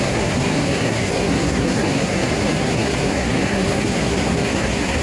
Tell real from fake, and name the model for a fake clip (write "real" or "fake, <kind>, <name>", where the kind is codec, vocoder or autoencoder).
fake, codec, SNAC